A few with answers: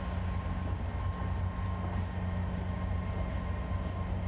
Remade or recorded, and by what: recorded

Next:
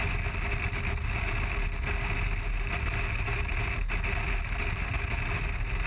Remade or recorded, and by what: recorded